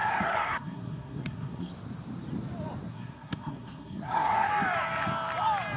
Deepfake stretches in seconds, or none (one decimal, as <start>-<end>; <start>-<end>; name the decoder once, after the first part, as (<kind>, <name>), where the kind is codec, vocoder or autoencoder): 0.0-1.7 (codec, SNAC); 2.9-4.5